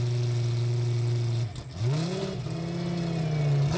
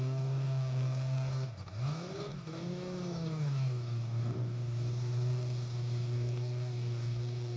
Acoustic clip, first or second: first